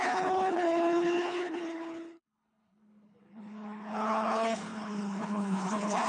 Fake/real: fake